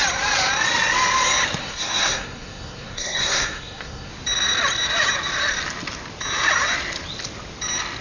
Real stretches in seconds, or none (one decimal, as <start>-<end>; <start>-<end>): 0.0-1.6; 4.1-8.0